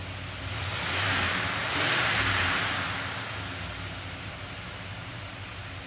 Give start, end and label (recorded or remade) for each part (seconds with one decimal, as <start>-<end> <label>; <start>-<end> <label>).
0.0-5.9 recorded